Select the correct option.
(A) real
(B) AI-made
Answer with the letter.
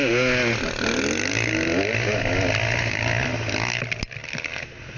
A